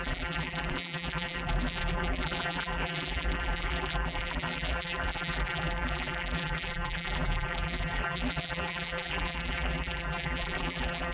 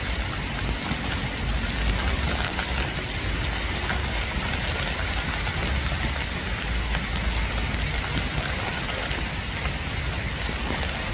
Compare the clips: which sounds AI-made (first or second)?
first